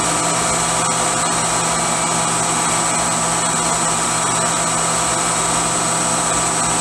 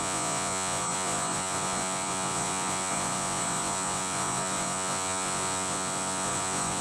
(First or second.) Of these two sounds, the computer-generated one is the second